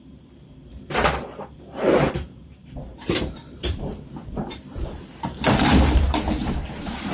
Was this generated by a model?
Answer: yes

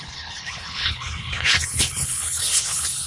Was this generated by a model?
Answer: yes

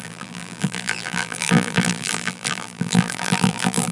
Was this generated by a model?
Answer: yes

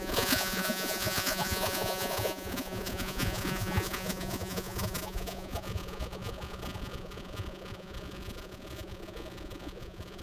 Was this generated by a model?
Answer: yes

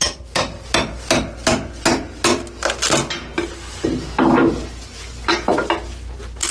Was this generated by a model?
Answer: no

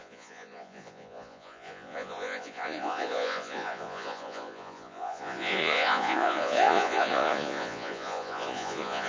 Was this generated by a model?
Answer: yes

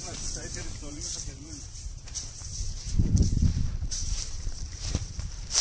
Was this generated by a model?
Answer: yes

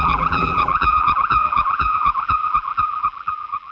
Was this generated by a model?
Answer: yes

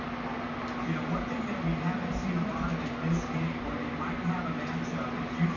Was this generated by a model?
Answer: no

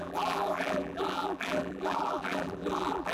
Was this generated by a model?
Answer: yes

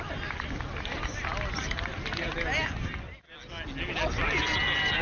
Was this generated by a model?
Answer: no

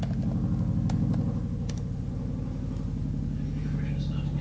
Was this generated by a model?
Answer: no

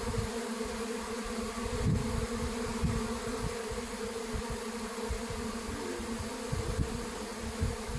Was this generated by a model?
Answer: no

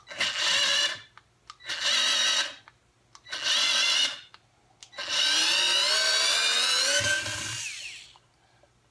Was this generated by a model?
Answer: no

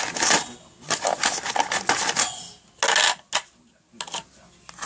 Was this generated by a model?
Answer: no